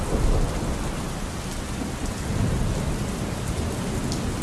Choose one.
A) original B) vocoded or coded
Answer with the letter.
A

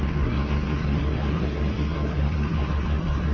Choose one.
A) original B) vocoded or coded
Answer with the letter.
B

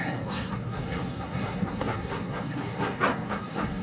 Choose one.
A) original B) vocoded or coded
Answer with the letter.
B